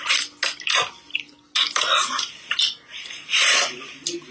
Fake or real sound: real